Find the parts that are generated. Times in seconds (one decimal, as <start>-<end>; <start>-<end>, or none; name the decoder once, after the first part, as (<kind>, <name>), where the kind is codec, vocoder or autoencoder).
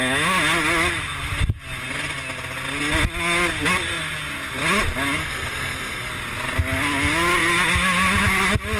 5.2-6.1 (codec, SNAC)